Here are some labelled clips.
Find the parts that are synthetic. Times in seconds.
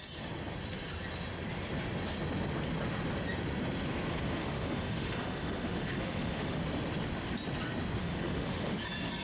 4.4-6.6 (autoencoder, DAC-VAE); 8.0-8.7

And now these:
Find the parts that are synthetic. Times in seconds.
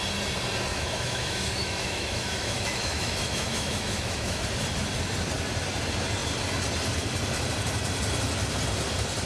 0.7-4.4 (autoencoder, DAC-VAE)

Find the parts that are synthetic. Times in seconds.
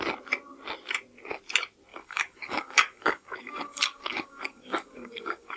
1.9-5.6 (codec, DAC)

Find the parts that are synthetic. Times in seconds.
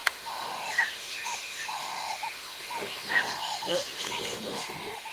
0.0-5.1 (autoencoder, DAC-VAE)